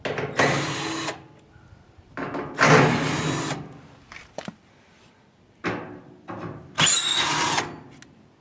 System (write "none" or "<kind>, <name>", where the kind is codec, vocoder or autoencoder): none